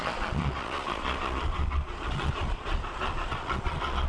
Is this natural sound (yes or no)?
no